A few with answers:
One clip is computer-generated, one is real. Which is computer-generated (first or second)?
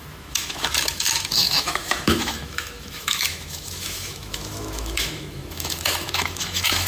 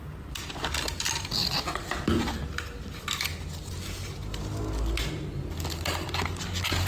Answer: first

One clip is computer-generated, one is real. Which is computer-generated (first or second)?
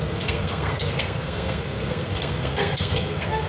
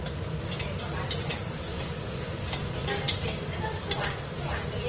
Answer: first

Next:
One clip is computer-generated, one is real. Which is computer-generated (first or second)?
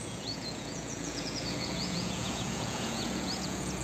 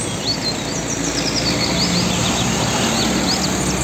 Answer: first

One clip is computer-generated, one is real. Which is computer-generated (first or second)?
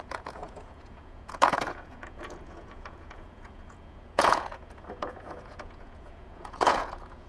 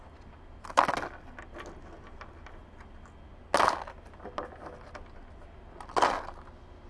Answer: first